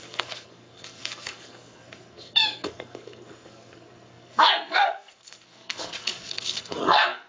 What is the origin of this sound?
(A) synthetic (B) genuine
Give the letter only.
A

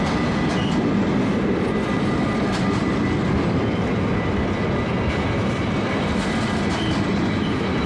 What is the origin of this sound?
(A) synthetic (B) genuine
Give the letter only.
B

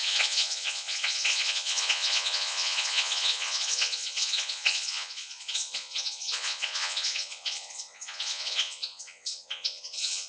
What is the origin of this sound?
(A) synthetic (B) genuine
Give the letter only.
A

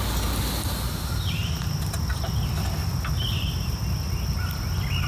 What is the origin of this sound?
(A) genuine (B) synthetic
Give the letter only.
A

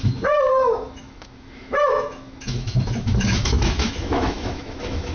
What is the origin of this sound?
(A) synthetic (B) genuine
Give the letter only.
A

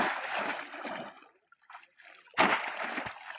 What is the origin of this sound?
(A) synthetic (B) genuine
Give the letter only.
B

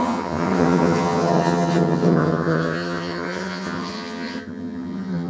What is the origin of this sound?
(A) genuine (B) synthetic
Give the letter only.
B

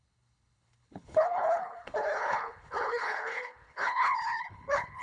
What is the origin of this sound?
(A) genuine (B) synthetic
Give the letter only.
B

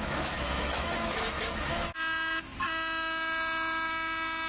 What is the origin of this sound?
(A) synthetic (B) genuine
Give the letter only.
A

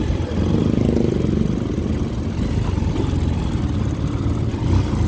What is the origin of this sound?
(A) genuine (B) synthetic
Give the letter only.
A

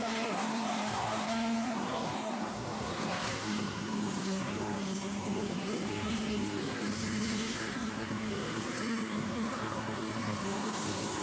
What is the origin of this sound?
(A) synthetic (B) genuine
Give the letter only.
A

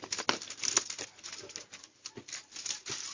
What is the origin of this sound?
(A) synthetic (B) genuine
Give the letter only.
B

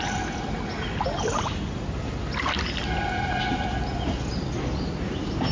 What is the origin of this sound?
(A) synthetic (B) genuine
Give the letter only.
A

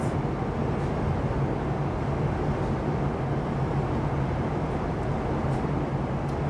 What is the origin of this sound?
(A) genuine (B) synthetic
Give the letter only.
A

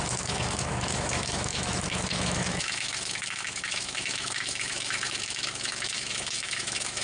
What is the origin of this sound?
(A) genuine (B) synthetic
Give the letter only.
B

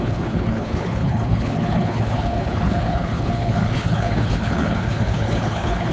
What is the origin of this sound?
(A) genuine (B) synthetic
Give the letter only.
B